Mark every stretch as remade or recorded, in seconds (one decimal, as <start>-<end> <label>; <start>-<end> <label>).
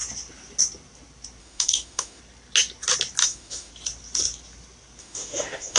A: 0.0-1.4 recorded; 1.4-2.2 remade; 2.2-3.2 recorded; 3.2-3.7 remade; 3.7-5.0 recorded; 5.0-5.8 remade